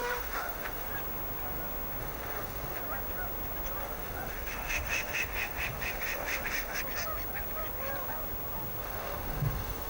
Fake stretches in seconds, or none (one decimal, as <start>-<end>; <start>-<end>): 0.0-0.9; 2.0-2.8; 3.8-6.8; 8.8-9.9